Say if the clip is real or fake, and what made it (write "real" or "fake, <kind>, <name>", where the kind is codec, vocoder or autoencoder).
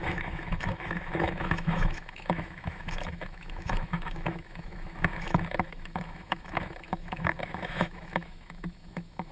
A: fake, autoencoder, DAC-VAE